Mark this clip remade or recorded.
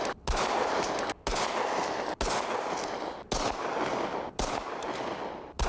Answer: recorded